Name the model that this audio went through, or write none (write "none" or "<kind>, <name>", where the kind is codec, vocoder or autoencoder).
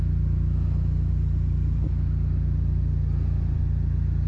none